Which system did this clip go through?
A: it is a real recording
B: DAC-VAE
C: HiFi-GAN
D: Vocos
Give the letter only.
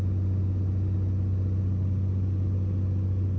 A